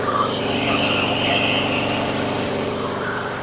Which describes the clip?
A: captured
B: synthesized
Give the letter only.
B